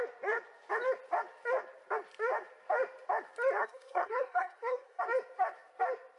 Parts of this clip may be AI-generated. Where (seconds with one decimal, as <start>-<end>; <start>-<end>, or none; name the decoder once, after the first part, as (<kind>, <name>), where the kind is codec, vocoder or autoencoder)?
3.6-5.0 (codec, SNAC)